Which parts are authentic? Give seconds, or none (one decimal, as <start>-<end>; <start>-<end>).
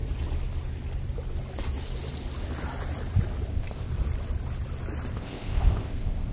0.0-3.5; 3.9-5.1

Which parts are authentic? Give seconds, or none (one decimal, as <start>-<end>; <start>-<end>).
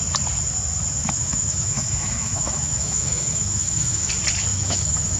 0.0-1.0; 4.1-4.5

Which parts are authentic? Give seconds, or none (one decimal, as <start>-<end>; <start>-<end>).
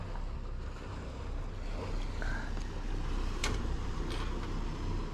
0.0-3.4; 4.0-5.1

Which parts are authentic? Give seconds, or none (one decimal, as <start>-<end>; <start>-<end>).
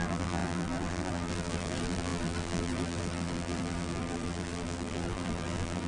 none